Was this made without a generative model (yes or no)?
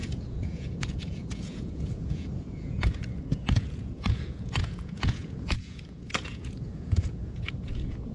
no